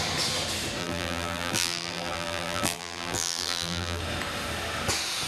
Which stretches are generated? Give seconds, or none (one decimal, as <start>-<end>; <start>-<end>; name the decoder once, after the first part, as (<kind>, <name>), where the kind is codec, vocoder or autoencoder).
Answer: 0.8-4.0 (vocoder, BigVGAN v2)